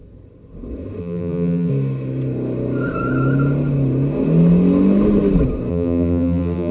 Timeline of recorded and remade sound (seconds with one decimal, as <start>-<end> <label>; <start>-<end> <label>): 0.0-1.0 recorded; 1.0-1.7 remade; 1.7-5.7 recorded; 5.7-6.7 remade